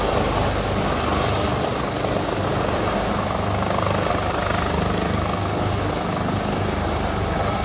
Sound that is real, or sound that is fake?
real